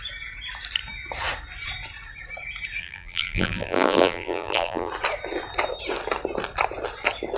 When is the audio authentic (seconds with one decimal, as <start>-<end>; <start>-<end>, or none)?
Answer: 0.0-2.8; 4.9-7.4